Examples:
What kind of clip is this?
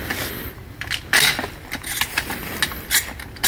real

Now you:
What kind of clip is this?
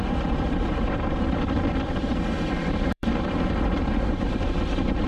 fake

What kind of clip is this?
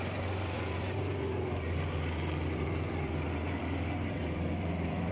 fake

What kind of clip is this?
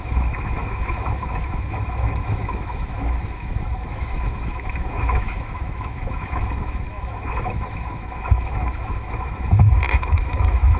fake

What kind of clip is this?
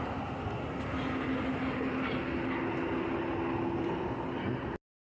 real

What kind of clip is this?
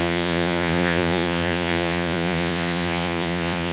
fake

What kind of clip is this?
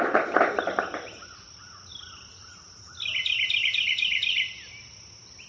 real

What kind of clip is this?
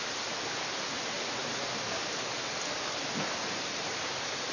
real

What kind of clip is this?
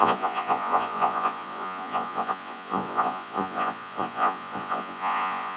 fake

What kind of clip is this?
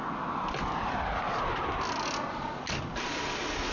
real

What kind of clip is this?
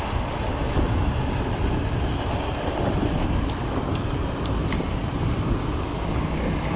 real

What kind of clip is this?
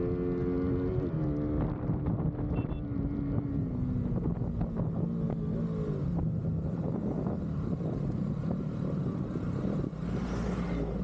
real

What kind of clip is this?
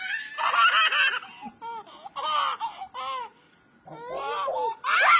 real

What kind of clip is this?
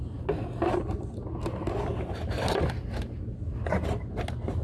real